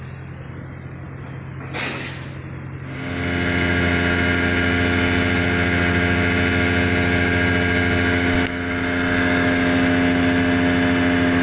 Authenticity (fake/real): real